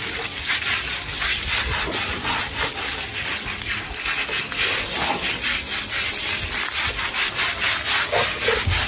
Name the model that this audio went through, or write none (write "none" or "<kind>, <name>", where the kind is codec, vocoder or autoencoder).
none